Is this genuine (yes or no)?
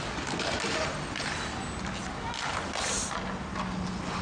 yes